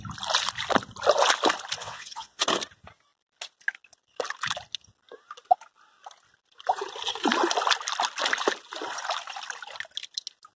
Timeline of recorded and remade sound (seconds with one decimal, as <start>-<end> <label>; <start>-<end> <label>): 0.0-1.8 recorded; 1.8-2.4 remade; 2.4-10.6 recorded